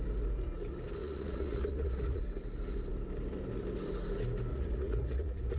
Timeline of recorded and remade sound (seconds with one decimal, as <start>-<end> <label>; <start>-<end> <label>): 0.0-1.0 recorded; 1.0-2.2 remade; 2.2-4.5 recorded; 4.5-5.6 remade